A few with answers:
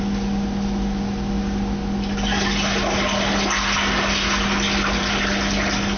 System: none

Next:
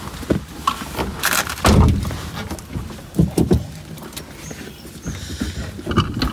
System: none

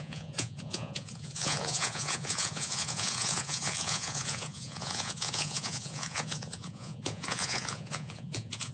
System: vocoder, Vocos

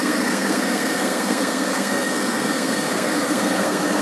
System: codec, SNAC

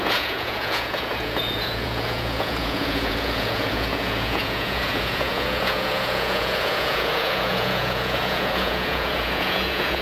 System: vocoder, Vocos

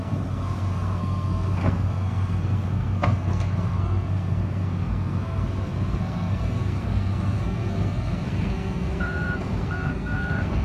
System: codec, SNAC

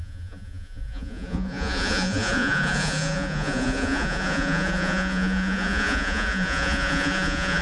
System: vocoder, Vocos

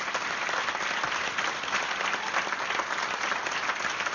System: none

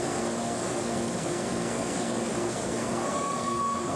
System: codec, SNAC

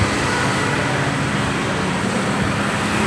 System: none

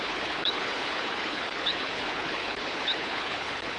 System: codec, HILCodec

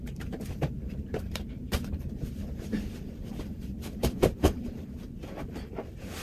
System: vocoder, BigVGAN v2